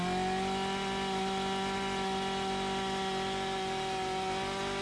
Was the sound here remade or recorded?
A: recorded